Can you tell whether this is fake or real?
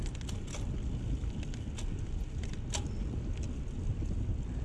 real